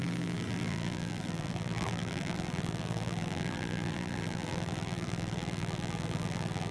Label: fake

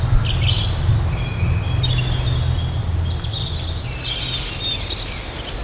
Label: real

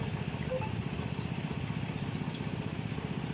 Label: real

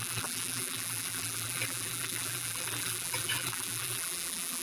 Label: fake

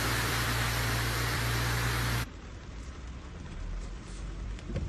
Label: fake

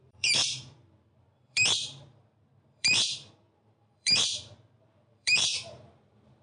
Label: fake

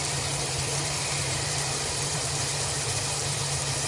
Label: fake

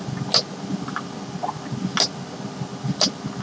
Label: real